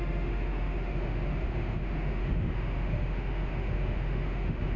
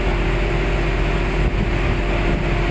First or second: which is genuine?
second